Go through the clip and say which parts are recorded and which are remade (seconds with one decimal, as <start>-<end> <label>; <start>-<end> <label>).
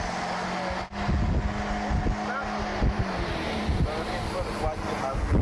0.0-2.7 recorded; 2.7-4.4 remade; 4.4-5.4 recorded